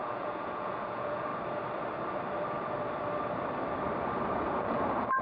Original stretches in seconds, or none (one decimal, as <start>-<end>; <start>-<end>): 1.3-4.4